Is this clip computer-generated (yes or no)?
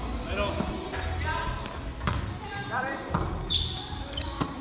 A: no